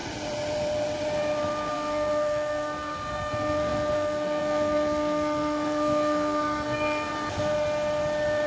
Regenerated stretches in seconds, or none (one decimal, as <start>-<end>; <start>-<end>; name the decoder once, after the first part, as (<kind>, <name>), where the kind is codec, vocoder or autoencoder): 1.7-7.1 (codec, SNAC)

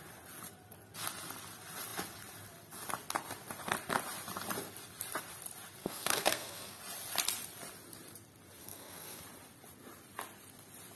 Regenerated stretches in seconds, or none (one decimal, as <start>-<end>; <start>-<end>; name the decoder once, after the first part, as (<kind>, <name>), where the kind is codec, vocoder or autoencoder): 5.8-6.8 (codec, SNAC); 8.6-9.2

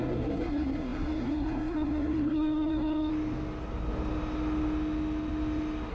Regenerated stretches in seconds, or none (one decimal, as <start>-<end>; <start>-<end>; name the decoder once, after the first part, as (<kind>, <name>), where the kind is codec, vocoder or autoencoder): 0.0-3.1 (codec, SNAC)

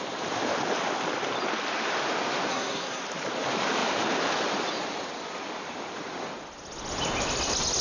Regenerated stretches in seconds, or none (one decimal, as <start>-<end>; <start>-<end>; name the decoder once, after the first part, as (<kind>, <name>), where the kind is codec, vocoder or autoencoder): 2.5-3.0 (codec, SNAC)

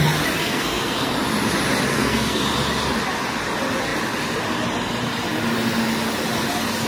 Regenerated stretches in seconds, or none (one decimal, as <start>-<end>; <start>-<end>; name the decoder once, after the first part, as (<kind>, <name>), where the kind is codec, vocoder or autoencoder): 0.4-1.1 (codec, SNAC); 1.9-2.4

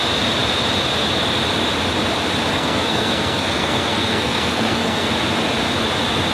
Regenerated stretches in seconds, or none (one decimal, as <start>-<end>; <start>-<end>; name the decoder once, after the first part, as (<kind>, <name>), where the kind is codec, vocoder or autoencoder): 2.5-5.1 (codec, SNAC)

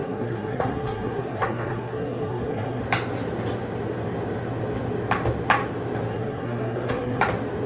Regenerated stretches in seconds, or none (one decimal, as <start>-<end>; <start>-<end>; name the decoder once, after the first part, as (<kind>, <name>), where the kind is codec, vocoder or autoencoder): 0.0-2.8 (codec, SNAC); 6.1-7.2